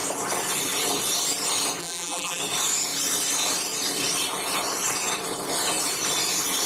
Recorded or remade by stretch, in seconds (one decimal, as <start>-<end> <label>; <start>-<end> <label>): 0.0-1.8 recorded; 1.8-2.4 remade; 2.4-6.7 recorded

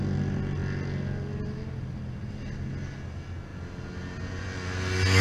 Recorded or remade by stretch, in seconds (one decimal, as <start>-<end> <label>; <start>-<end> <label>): 0.0-5.2 recorded